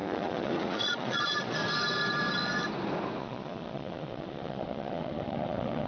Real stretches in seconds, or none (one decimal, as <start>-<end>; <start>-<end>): 1.6-3.2